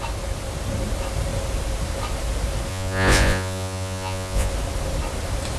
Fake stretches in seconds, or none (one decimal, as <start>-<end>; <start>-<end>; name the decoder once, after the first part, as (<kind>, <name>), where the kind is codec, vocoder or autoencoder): 2.7-4.5 (vocoder, Vocos)